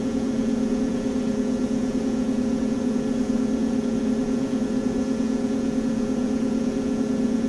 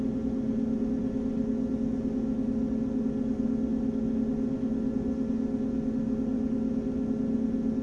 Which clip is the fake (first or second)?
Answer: first